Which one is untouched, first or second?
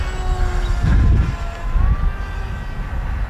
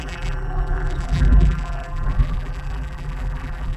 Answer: first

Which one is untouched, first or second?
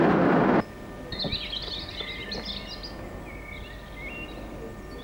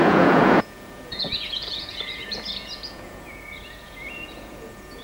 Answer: first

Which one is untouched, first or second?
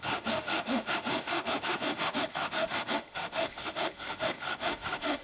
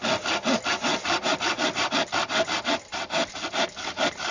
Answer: second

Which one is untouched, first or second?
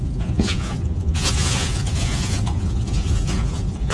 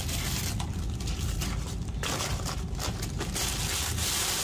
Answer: second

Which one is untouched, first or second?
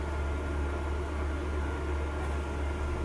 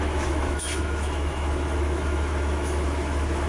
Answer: first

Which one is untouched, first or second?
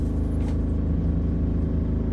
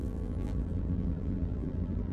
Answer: first